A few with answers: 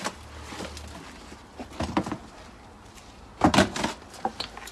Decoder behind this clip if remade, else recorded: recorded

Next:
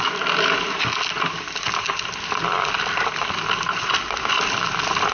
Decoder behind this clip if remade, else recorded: recorded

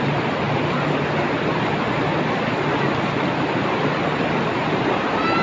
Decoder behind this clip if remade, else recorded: recorded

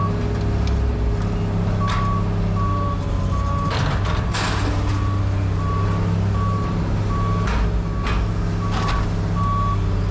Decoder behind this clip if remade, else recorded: recorded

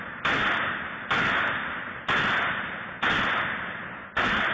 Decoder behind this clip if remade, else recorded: recorded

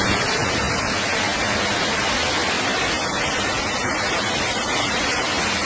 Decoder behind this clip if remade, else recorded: recorded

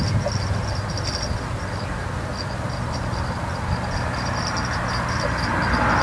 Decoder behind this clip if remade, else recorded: recorded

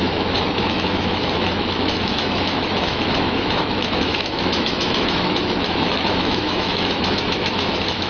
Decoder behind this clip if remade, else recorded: remade, autoencoder, DAC-VAE